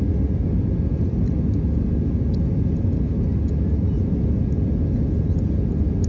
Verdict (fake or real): real